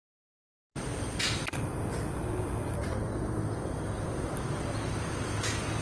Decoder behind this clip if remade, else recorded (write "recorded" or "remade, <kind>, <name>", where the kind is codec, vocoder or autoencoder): recorded